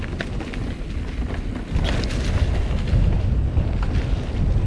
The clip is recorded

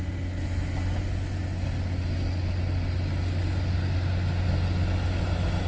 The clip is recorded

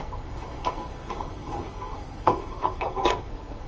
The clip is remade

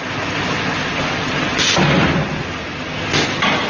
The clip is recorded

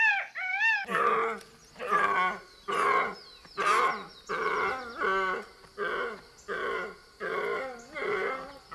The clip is recorded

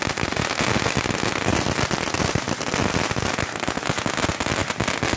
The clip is recorded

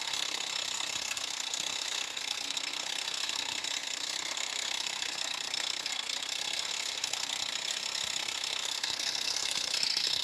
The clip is remade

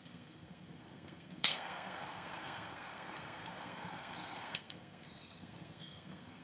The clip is remade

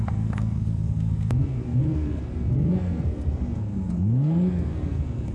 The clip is remade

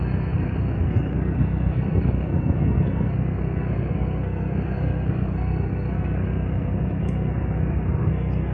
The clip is remade